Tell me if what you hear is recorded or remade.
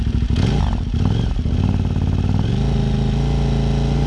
recorded